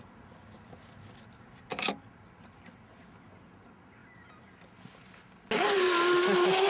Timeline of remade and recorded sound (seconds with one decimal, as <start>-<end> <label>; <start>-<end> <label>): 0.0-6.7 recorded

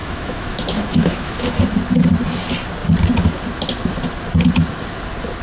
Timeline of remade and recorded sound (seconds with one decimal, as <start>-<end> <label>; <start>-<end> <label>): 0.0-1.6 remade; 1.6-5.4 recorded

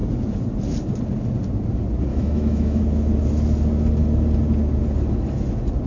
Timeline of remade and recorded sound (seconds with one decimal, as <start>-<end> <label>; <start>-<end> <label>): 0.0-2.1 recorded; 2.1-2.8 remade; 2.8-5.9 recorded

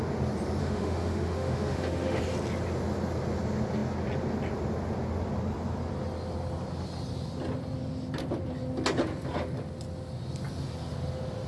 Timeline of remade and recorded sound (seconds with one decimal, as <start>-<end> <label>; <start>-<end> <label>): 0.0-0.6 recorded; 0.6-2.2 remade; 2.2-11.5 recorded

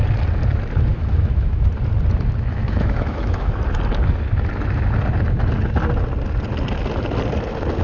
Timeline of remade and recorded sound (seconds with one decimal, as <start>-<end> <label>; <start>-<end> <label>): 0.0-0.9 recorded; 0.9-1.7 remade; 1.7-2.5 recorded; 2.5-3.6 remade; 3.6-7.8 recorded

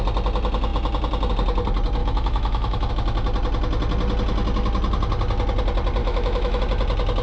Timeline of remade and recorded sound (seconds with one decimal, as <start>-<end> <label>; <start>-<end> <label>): 0.0-2.0 recorded; 2.0-2.9 remade; 2.9-6.0 recorded; 6.0-6.6 remade; 6.6-7.2 recorded

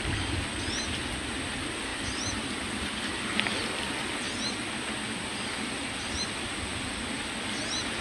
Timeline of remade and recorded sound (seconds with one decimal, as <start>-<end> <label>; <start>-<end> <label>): 0.0-8.0 recorded

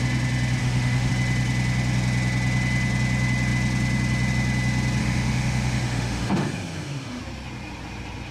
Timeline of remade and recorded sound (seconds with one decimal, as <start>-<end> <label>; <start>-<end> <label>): 0.0-0.6 recorded; 0.6-1.1 remade; 1.1-5.0 recorded; 5.0-7.2 remade; 7.2-8.3 recorded